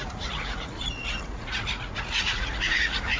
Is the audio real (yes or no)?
no